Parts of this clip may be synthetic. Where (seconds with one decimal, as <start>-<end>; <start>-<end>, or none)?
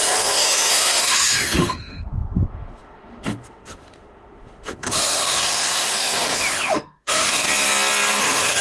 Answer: 0.0-7.5; 8.2-8.6